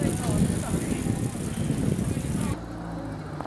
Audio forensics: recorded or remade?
recorded